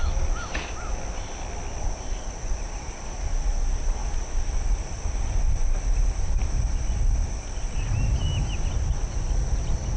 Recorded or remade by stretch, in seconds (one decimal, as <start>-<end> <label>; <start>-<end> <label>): 0.0-10.0 recorded